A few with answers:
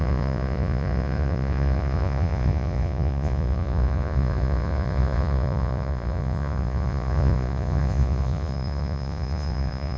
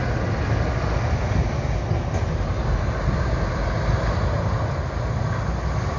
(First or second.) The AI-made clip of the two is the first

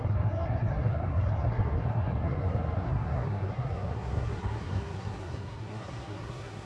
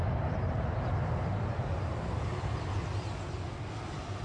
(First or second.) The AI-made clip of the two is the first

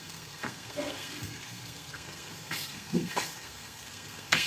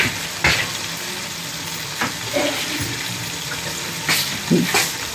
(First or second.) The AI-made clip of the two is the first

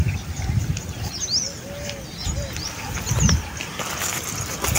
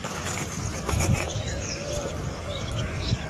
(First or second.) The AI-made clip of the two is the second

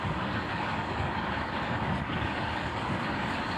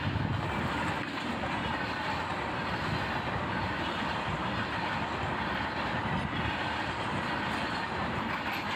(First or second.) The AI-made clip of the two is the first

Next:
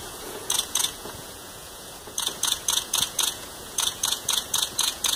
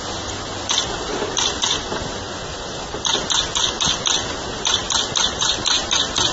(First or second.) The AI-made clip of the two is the first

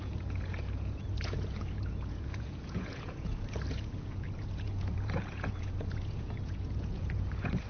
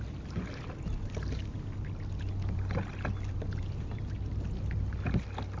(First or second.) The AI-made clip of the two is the first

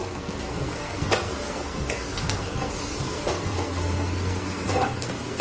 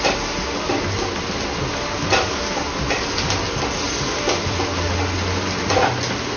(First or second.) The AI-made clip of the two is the first